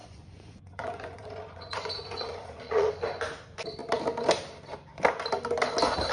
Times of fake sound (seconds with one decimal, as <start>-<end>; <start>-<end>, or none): 0.0-2.9